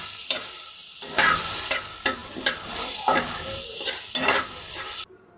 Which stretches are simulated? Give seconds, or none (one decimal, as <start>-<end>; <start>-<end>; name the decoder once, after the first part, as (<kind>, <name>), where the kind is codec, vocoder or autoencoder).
none